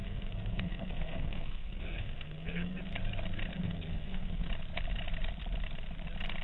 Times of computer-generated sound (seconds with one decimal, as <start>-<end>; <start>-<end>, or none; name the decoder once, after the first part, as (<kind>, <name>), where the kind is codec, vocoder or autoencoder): 0.0-2.8 (codec, SNAC); 3.5-4.5